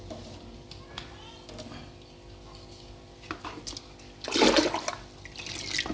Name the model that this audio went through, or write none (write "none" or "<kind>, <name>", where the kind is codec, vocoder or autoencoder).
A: none